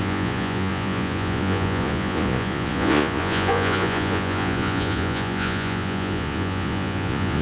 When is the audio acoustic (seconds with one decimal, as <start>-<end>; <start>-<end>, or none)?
none